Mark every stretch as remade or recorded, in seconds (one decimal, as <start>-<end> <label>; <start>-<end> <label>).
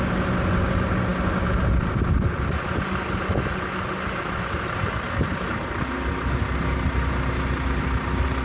0.0-8.4 recorded